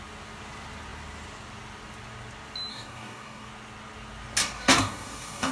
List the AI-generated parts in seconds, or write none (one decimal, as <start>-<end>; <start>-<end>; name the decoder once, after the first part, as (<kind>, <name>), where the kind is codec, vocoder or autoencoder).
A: 2.7-3.5 (codec, DAC); 4.4-5.5